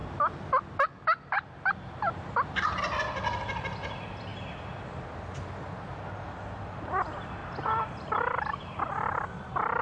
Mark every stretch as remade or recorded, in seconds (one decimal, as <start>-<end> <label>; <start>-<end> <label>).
0.0-7.4 recorded; 7.4-8.8 remade; 8.8-9.8 recorded